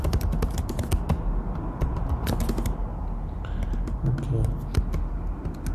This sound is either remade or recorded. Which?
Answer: recorded